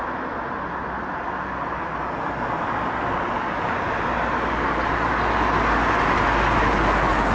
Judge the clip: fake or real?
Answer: real